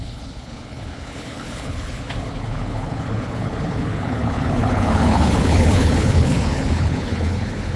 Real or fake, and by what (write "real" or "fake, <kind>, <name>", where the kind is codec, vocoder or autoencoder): fake, codec, HILCodec